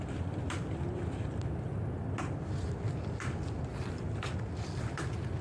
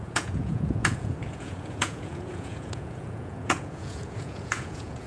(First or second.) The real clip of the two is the first